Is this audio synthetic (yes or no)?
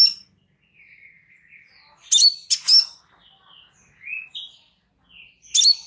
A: no